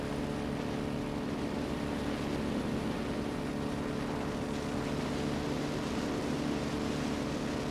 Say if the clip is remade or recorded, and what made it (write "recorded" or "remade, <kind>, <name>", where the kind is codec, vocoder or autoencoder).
recorded